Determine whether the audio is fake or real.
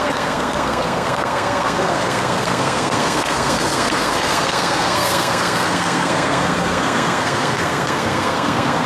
fake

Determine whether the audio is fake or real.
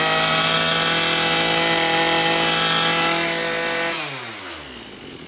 real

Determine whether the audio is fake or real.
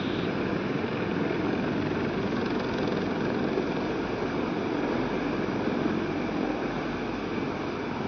real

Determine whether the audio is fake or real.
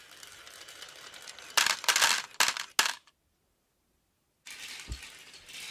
real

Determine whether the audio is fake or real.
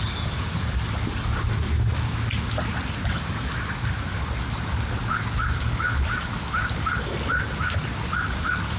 real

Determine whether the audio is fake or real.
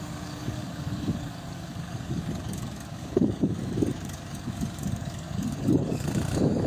fake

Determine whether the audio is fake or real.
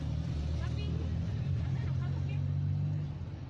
real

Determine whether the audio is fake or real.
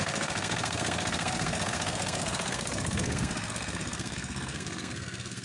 fake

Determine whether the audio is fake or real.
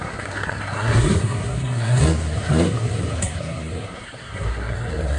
fake